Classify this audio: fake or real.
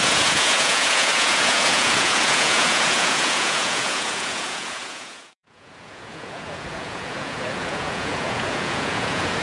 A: fake